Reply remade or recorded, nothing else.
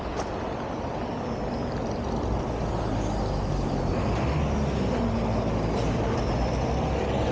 recorded